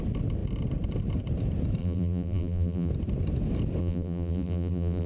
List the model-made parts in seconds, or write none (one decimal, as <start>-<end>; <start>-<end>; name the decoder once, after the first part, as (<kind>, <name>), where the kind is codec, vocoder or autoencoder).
1.8-2.9 (vocoder, BigVGAN v2); 3.8-5.1